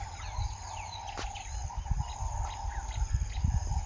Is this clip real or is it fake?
real